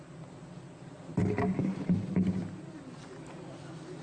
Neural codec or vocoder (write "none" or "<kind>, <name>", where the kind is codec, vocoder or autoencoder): none